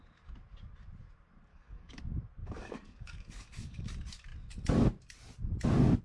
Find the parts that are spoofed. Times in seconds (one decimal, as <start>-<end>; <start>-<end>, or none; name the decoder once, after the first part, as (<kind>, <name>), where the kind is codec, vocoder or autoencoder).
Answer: 1.5-2.0 (codec, DAC); 2.4-3.9